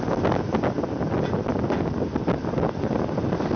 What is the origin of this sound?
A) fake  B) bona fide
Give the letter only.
B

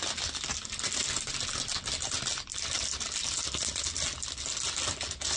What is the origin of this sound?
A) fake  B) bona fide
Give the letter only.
B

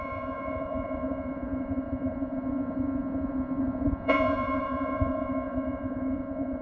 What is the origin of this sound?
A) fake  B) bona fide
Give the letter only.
A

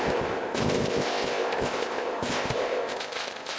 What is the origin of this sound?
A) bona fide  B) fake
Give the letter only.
B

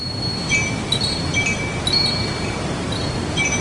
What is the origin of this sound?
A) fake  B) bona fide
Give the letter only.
B